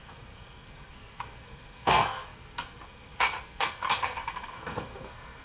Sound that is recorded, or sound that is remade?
remade